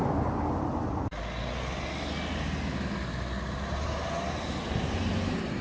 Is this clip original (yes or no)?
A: yes